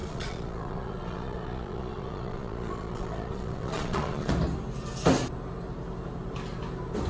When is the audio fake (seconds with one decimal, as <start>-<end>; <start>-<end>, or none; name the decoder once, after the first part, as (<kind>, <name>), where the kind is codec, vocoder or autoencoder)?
0.0-4.3 (vocoder, Vocos)

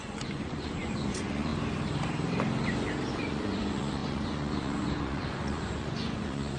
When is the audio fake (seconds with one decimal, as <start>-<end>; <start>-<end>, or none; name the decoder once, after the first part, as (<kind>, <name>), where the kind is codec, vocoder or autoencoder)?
0.0-1.5 (vocoder, Vocos); 3.1-6.6

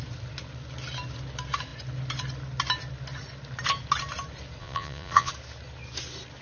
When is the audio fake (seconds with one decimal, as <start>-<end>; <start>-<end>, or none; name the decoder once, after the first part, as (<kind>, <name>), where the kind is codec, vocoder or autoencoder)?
4.6-5.3 (vocoder, Vocos)

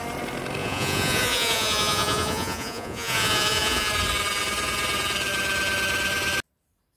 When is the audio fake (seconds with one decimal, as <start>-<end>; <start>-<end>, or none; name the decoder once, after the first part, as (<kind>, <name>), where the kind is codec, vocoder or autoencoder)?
0.6-3.9 (vocoder, Vocos)

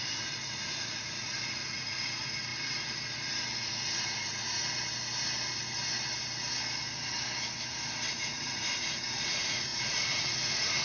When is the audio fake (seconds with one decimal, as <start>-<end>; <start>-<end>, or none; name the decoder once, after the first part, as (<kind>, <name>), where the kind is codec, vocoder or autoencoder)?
0.0-2.5 (vocoder, Vocos); 3.6-4.6; 8.1-10.8

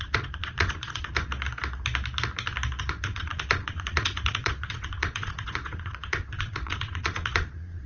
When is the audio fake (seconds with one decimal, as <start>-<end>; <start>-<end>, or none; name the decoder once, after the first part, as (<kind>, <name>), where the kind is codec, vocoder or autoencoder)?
0.0-1.3 (vocoder, Vocos); 2.8-7.9